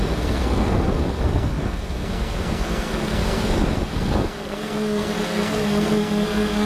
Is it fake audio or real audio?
fake